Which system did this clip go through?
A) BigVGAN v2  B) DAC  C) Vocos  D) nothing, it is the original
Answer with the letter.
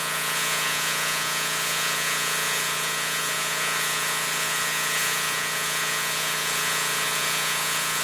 C